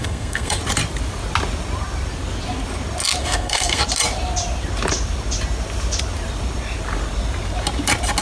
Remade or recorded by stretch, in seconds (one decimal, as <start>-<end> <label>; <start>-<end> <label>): 0.0-0.6 remade; 0.6-3.2 recorded; 3.2-3.8 remade; 3.8-8.2 recorded